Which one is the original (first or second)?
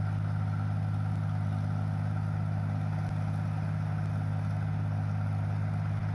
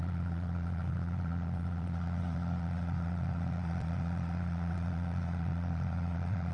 first